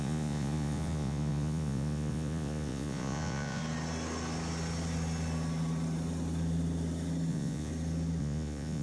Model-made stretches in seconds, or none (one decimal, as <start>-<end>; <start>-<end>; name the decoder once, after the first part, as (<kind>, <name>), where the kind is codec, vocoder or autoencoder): 0.0-3.6 (vocoder, Vocos); 7.3-7.7; 8.2-8.8